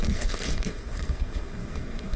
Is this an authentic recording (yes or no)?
no